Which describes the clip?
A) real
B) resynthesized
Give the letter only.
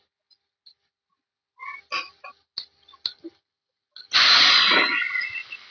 A